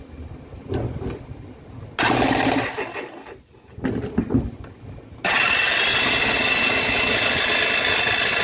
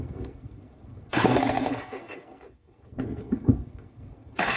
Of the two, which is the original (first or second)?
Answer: first